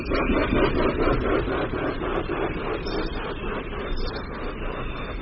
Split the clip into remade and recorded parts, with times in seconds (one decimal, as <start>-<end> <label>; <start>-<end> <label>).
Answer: 0.0-0.4 remade; 0.4-1.7 recorded; 1.7-2.1 remade; 2.1-5.2 recorded